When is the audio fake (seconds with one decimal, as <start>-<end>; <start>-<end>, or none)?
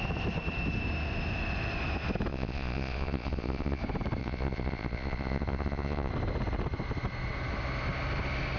2.3-3.8; 4.2-6.1